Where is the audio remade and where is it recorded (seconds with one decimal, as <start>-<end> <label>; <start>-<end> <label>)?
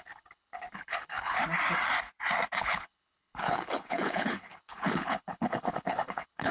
0.0-1.4 remade; 1.4-2.6 recorded; 2.6-6.5 remade